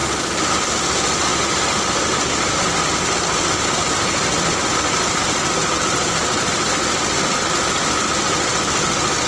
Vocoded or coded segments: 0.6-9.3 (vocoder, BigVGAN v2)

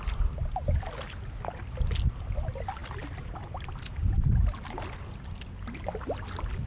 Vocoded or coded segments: 4.0-4.8 (vocoder, BigVGAN v2)